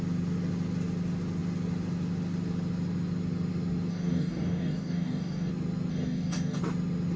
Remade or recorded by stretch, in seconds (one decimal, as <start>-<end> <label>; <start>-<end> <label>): 0.0-3.9 recorded; 3.9-5.5 remade; 5.5-5.9 recorded; 5.9-6.6 remade; 6.6-7.2 recorded